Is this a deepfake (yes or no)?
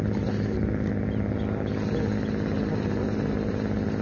no